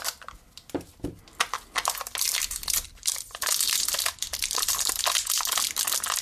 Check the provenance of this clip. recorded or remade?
recorded